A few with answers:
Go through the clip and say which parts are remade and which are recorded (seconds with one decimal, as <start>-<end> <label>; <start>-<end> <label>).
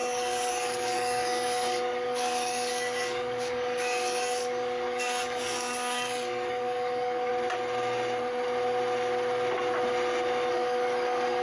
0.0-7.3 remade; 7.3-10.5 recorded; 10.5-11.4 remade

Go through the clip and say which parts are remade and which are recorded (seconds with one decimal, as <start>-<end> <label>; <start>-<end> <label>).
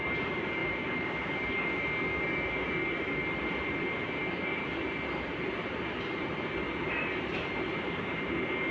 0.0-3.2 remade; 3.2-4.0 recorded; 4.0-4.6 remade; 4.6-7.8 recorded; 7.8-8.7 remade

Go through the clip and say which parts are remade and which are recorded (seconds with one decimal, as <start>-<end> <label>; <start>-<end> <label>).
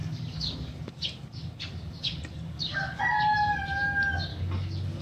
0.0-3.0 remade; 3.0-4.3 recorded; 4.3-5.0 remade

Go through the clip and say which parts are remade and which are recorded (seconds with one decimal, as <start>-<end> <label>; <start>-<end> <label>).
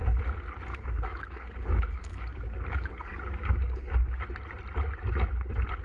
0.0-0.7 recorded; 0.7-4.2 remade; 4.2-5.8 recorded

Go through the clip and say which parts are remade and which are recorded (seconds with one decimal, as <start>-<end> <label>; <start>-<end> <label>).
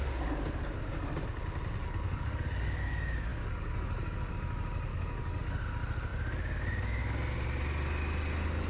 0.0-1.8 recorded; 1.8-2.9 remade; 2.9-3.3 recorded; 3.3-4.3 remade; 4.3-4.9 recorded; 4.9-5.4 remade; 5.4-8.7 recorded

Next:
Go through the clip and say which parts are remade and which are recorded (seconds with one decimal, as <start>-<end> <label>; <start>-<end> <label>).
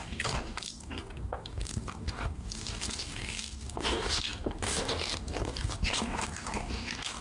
0.0-7.2 remade